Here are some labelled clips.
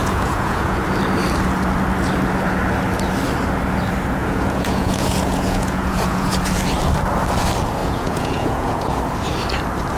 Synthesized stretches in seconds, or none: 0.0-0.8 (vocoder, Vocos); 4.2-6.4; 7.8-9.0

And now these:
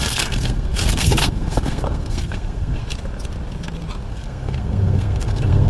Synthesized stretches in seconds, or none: 0.0-2.8 (codec, SNAC); 4.1-5.7